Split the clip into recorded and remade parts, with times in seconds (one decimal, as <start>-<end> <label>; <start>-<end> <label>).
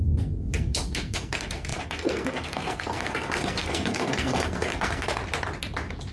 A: 0.0-5.2 remade; 5.2-6.1 recorded